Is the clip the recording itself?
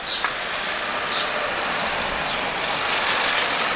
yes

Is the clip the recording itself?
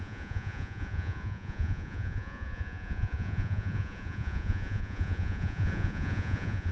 no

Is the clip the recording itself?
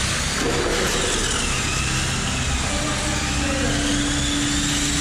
yes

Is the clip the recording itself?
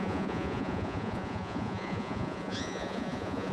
no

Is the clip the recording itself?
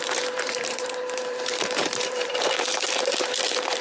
no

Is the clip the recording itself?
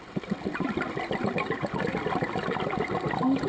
yes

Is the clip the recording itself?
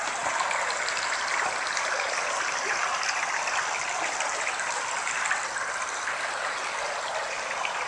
yes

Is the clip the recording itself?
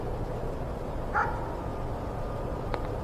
yes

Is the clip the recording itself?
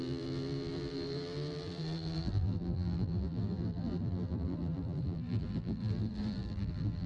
no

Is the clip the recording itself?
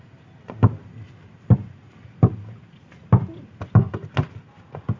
yes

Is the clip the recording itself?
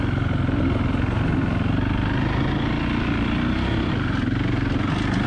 yes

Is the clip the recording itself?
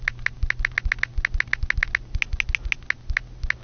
yes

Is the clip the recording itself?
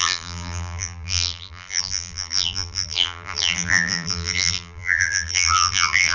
no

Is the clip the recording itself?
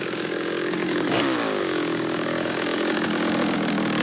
no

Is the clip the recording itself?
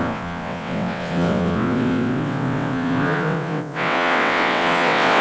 no